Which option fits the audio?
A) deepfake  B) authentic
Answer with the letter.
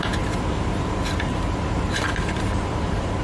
A